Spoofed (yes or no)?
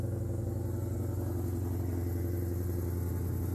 no